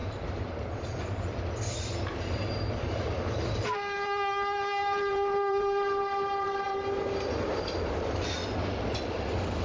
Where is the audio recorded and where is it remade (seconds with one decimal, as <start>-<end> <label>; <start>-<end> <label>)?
0.0-1.4 remade; 1.4-2.1 recorded; 2.1-6.5 remade; 6.5-9.6 recorded

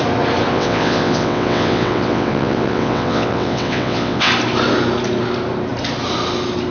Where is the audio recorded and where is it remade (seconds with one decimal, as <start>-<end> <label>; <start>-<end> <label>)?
0.0-0.5 recorded; 0.5-4.3 remade; 4.3-6.7 recorded

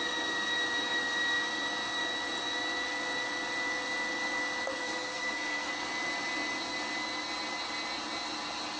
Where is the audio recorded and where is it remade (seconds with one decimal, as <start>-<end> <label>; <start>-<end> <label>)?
0.0-4.8 recorded; 4.8-5.7 remade; 5.7-8.8 recorded

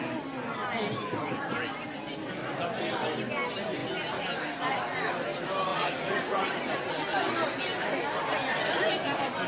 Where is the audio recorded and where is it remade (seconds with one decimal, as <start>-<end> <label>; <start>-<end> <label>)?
0.0-5.7 recorded; 5.7-6.8 remade; 6.8-9.5 recorded

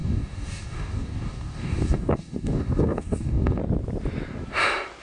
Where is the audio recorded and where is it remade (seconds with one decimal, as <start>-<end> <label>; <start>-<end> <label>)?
0.0-3.6 remade; 3.6-5.0 recorded

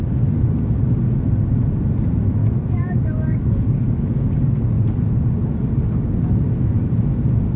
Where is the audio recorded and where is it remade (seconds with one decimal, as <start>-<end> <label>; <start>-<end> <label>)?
0.0-2.4 recorded; 2.4-4.5 remade; 4.5-7.6 recorded